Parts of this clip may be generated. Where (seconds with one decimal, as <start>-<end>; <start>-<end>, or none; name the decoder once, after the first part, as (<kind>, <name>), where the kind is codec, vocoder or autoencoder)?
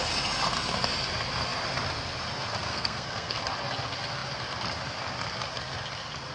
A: 2.7-3.4 (codec, SNAC)